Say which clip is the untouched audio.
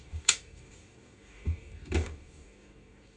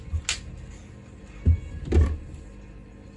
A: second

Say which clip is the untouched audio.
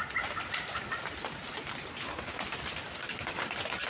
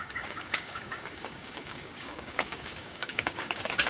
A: first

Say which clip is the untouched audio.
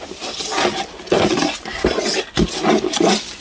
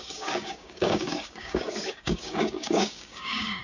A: first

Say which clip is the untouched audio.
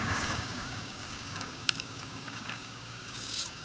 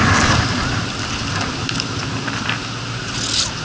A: second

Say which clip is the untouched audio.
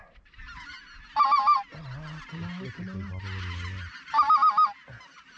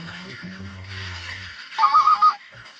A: first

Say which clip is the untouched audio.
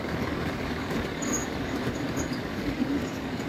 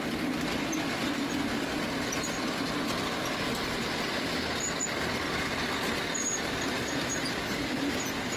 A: second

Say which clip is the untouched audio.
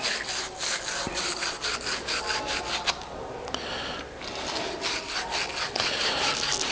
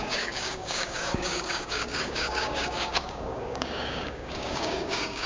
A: first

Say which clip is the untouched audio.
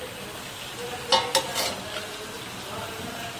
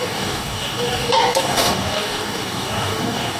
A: first